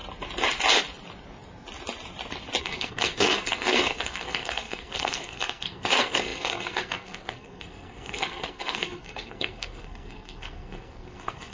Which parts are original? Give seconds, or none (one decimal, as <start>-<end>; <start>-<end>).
0.0-2.6